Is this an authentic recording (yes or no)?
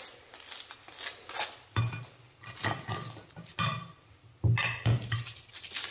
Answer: yes